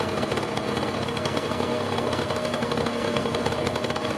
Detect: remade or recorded remade